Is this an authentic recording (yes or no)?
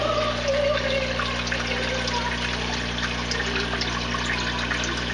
yes